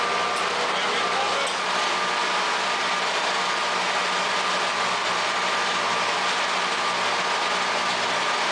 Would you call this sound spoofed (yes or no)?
no